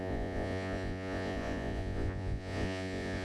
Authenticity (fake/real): fake